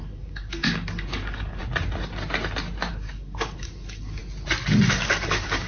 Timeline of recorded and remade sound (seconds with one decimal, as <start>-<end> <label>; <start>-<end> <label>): 0.0-1.6 remade; 1.6-2.9 recorded; 2.9-4.2 remade; 4.2-4.9 recorded; 4.9-5.7 remade